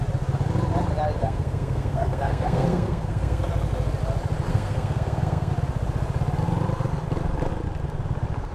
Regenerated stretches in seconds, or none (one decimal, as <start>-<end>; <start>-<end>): 1.2-3.5; 4.5-5.5